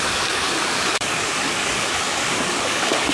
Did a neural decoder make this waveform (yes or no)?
yes